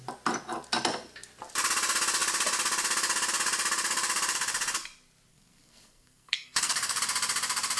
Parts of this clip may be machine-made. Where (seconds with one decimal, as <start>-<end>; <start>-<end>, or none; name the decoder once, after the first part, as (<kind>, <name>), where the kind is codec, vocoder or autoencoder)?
5.3-7.0 (codec, SNAC)

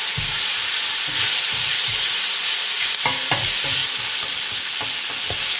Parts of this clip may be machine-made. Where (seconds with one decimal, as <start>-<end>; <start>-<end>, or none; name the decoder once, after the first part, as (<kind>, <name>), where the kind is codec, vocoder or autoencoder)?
none

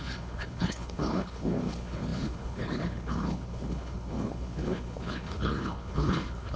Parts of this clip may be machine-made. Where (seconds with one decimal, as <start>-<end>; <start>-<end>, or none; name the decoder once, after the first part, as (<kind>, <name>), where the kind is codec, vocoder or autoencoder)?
0.0-6.6 (codec, HILCodec)